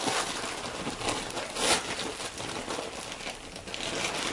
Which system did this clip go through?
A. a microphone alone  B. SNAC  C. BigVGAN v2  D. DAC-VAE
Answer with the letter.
A